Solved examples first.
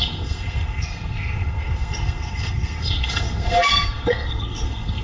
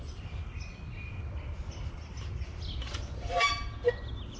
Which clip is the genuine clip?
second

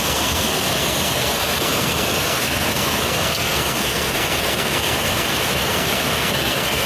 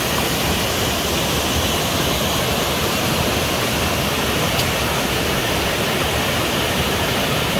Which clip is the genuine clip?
second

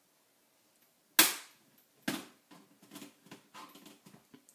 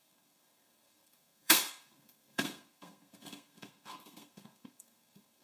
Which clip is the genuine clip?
first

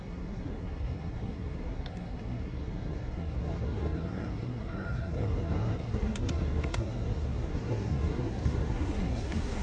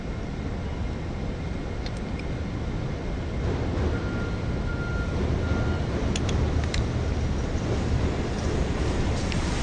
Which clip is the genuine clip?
second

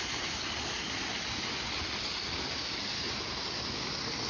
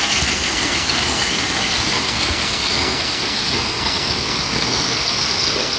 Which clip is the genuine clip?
first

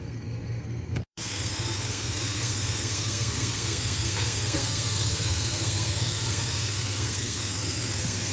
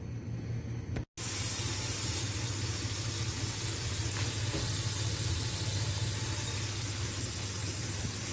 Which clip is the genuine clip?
second